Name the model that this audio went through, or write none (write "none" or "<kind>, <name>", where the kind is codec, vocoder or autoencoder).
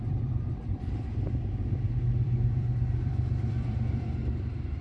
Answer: vocoder, BigVGAN v2